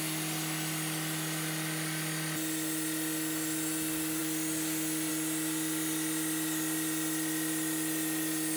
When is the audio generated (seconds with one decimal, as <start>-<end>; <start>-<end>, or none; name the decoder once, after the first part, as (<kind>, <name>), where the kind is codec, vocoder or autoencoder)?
none